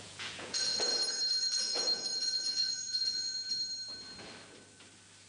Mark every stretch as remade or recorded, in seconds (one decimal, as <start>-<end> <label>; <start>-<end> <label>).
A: 0.0-0.7 remade; 0.7-1.4 recorded; 1.4-3.4 remade; 3.4-5.3 recorded